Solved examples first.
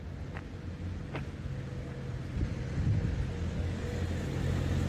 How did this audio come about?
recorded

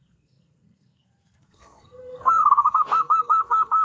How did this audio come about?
remade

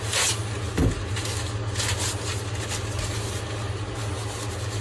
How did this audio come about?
recorded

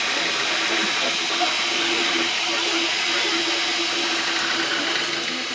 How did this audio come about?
recorded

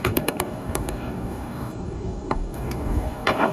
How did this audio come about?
remade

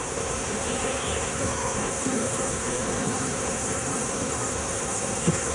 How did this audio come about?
remade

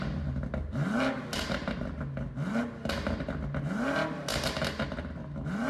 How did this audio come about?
recorded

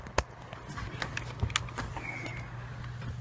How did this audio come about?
recorded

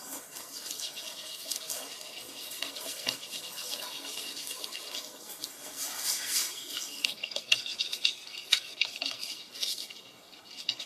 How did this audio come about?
remade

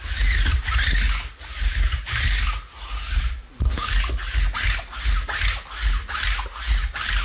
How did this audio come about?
recorded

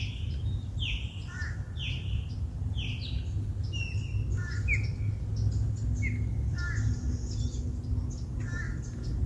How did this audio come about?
recorded